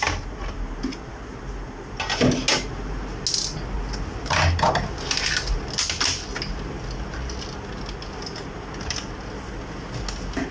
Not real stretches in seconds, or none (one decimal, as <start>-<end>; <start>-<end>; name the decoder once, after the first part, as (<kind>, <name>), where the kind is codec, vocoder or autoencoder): none